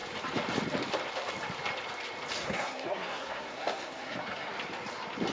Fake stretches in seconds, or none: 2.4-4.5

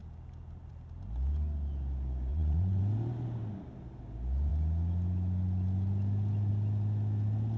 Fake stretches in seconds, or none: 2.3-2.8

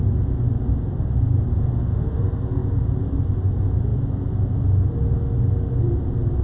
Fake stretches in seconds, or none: 1.5-2.2

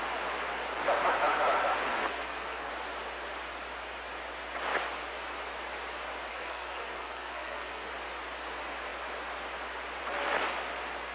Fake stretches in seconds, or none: 1.9-2.7; 6.3-7.9

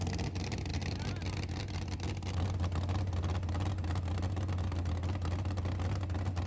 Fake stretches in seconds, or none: none

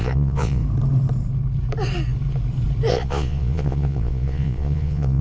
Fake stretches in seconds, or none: 0.0-0.6; 2.9-5.2

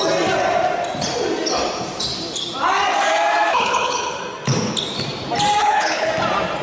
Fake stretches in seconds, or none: 3.5-4.2; 5.6-6.1

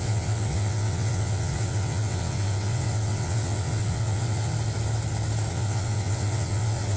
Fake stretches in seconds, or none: 0.0-4.5; 5.5-7.0